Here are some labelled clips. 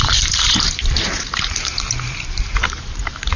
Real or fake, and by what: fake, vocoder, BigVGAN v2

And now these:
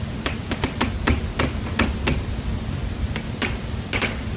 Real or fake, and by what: real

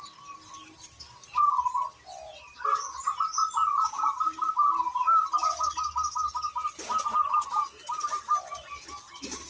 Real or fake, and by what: real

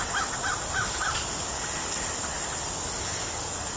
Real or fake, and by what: real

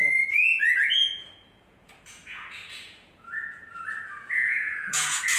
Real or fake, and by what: fake, vocoder, Vocos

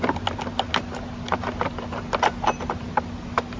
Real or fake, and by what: real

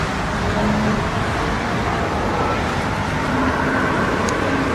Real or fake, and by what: real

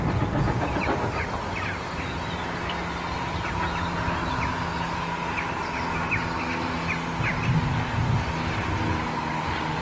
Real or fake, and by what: real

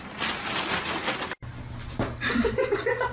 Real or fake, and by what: real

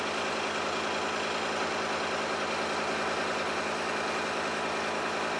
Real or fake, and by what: real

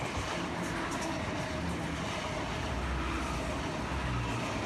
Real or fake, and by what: real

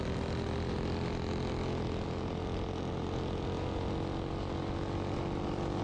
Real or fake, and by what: real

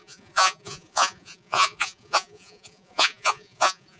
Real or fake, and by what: fake, vocoder, Vocos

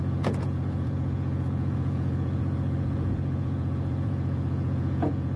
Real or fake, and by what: fake, vocoder, Vocos